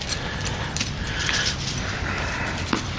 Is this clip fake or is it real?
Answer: real